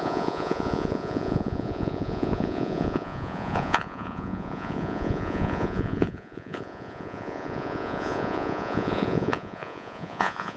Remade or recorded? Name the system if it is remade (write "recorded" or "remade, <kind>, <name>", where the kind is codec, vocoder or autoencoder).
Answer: remade, vocoder, Vocos